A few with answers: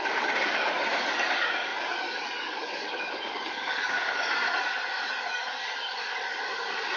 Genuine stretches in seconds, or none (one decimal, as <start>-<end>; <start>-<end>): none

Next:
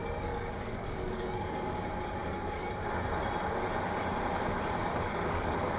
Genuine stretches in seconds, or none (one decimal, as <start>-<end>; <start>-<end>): 1.7-2.2; 2.7-4.8

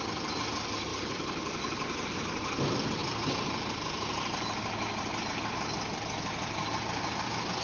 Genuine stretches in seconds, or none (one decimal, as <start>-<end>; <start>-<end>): 0.0-7.6

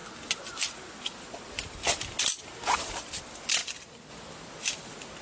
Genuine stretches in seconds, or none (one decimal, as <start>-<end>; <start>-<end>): 0.0-5.2